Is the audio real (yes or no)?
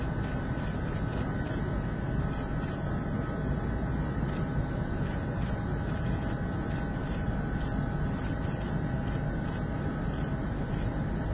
yes